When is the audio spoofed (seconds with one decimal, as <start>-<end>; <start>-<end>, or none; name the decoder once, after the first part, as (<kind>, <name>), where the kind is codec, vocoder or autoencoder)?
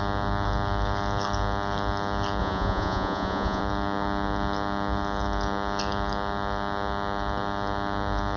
2.4-3.6 (vocoder, Vocos)